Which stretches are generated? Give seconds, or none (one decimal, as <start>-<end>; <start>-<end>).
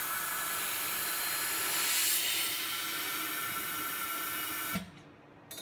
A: none